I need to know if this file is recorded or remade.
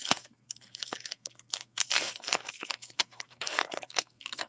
remade